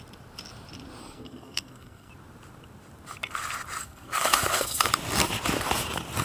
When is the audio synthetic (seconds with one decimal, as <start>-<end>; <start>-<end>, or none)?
1.0-2.1; 3.8-4.9